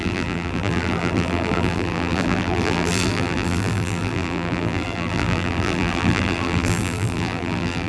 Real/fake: fake